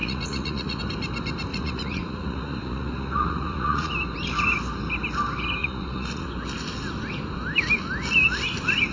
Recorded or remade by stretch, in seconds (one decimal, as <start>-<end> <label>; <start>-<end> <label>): 0.0-0.8 remade; 0.8-1.5 recorded; 1.5-3.9 remade; 3.9-5.6 recorded; 5.6-6.3 remade; 6.3-8.9 recorded